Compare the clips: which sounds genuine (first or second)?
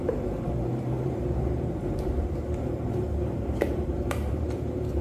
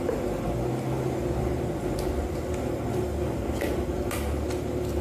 second